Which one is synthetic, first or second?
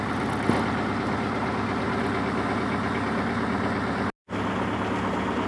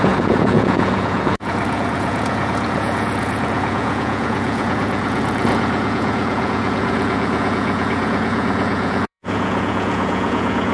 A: second